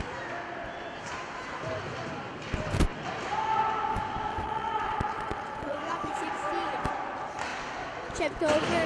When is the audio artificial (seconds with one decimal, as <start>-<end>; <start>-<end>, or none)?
4.3-6.2